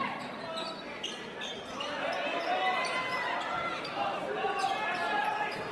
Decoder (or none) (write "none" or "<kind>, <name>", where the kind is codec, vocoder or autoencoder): vocoder, BigVGAN v2